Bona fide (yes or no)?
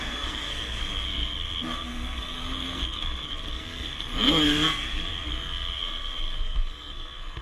no